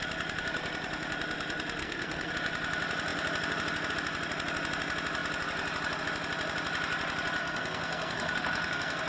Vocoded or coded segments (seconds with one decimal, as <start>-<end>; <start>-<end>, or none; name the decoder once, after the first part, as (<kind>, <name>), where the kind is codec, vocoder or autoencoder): 1.8-2.3 (codec, SNAC); 7.4-9.1